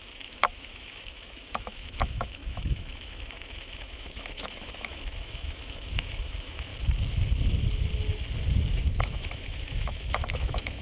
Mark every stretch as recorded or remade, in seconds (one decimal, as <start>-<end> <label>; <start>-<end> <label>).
0.0-6.7 remade; 6.7-9.0 recorded; 9.0-10.8 remade